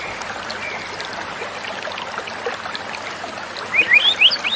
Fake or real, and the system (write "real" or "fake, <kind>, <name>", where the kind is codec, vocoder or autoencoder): real